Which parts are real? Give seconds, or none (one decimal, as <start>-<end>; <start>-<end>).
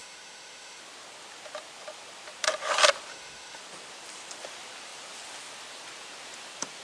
0.8-3.1; 3.6-6.8